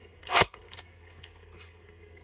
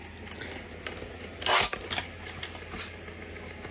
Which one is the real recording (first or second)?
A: second